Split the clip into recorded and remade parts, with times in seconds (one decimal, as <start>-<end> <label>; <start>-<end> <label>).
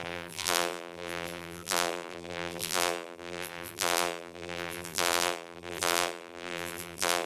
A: 0.0-7.3 remade